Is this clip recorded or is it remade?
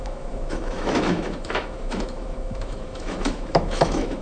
remade